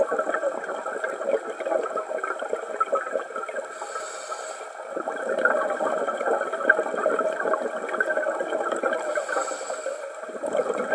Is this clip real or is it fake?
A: real